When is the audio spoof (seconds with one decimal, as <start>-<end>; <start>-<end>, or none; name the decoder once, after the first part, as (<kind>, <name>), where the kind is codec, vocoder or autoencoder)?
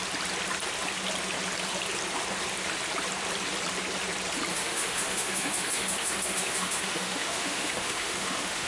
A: 4.5-8.7 (autoencoder, DAC-VAE)